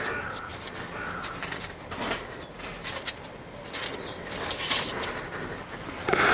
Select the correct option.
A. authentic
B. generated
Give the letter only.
A